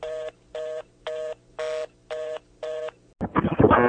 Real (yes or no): yes